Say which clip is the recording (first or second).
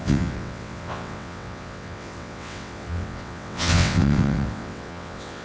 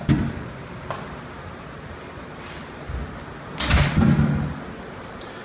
second